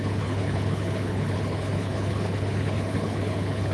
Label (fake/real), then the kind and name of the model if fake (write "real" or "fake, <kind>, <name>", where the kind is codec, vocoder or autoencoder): fake, codec, HILCodec